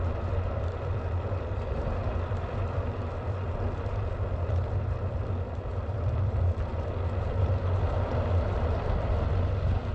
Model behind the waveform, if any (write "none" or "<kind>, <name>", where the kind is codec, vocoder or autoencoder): vocoder, BigVGAN v2